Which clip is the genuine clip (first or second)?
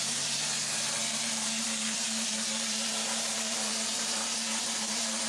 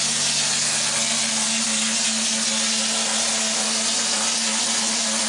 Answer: second